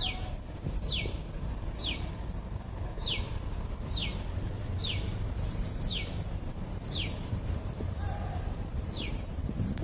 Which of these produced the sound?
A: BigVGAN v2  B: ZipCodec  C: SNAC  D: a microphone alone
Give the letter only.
A